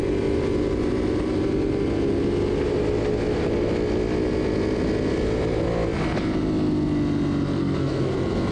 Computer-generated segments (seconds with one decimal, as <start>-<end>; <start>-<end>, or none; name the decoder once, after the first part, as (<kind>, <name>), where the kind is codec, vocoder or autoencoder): 7.6-8.1 (codec, SNAC)